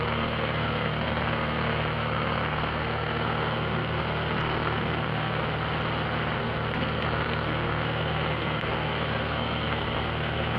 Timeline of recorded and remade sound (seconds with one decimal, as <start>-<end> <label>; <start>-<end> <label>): 0.0-5.4 remade; 5.4-6.4 recorded; 6.4-10.6 remade

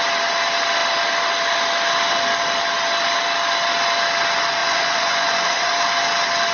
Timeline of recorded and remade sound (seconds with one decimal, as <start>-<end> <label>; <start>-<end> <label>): 0.0-4.6 recorded; 4.6-5.7 remade; 5.7-6.5 recorded